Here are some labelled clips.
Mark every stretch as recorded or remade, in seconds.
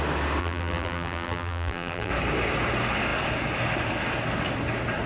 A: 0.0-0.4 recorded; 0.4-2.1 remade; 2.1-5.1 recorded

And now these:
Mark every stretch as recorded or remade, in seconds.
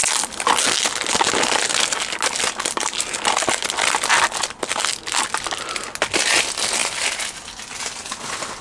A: 0.0-8.6 recorded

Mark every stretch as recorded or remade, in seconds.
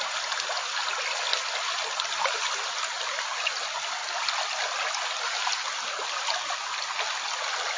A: 0.0-7.8 recorded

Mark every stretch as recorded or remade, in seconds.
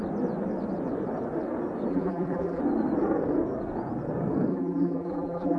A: 0.0-1.9 recorded; 1.9-2.6 remade; 2.6-4.5 recorded; 4.5-5.6 remade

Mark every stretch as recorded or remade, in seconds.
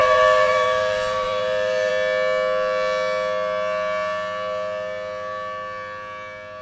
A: 0.0-1.9 remade; 1.9-6.6 recorded